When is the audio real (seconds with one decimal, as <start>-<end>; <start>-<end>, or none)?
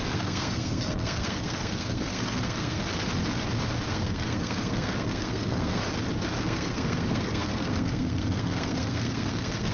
2.8-3.9; 5.8-6.4